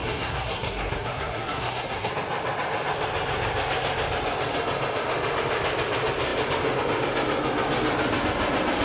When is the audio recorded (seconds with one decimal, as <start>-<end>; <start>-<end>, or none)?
2.1-8.8